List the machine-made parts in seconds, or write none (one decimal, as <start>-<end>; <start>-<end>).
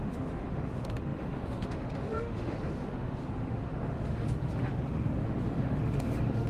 0.0-6.5